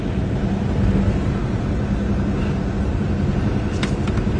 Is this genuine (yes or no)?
yes